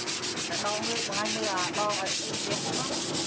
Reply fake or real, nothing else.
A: real